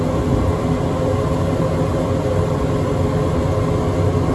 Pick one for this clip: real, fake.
real